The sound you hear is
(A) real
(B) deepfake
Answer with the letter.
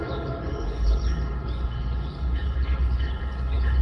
B